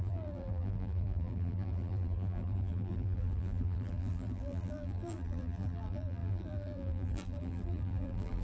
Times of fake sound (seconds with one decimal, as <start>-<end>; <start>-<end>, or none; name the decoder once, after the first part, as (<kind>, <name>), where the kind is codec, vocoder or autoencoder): 0.0-8.4 (vocoder, BigVGAN v2)